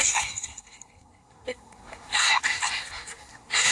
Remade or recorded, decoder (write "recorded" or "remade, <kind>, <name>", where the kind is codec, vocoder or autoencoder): remade, codec, SNAC